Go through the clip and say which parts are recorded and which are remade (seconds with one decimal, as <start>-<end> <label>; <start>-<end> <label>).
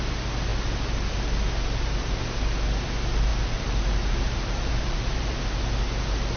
0.0-3.3 recorded; 3.3-5.4 remade; 5.4-6.4 recorded